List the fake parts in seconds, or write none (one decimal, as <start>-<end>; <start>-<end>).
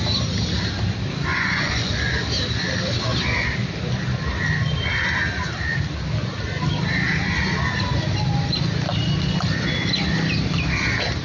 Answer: 1.3-2.1